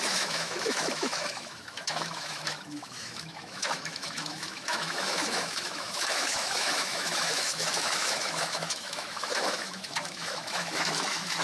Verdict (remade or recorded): remade